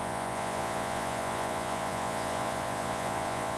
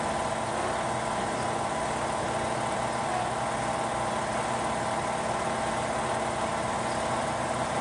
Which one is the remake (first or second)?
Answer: first